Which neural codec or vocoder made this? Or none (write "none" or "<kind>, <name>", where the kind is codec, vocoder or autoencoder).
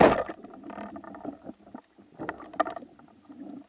none